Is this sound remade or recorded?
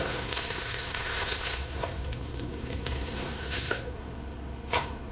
remade